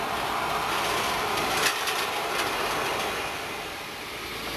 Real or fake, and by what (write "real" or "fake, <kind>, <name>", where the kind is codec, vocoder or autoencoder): real